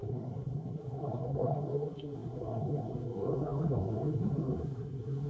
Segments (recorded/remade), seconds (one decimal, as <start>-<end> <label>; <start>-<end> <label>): 0.0-5.3 remade